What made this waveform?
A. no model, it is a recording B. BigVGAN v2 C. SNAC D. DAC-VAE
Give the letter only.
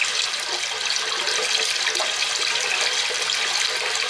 A